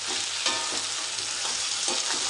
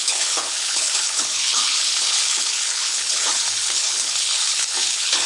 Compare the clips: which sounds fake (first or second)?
second